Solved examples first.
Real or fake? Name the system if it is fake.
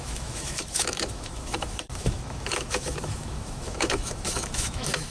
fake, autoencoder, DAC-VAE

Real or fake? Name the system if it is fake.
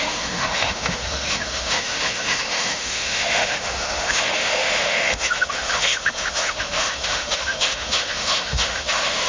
fake, autoencoder, DAC-VAE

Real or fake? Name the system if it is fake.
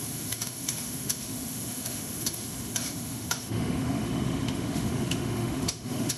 fake, autoencoder, DAC-VAE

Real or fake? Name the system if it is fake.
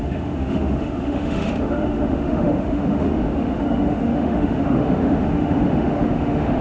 fake, autoencoder, DAC-VAE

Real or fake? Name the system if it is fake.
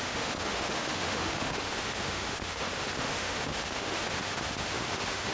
fake, autoencoder, DAC-VAE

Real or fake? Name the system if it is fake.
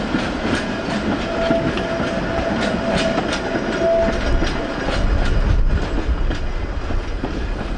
real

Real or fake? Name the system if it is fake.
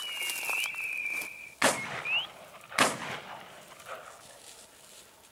real